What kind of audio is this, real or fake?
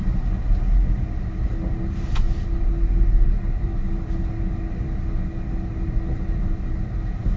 real